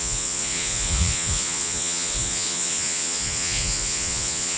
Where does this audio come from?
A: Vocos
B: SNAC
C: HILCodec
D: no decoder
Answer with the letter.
A